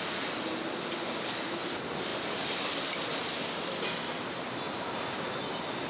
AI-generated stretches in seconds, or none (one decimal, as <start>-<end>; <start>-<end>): none